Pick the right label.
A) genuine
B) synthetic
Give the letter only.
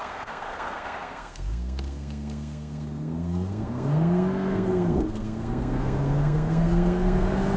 B